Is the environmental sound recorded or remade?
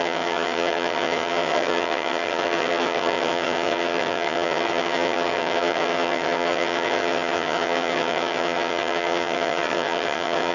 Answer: remade